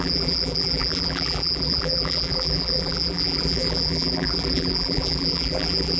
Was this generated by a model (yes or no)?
yes